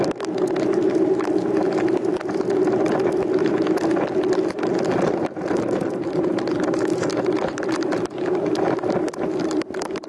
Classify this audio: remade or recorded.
recorded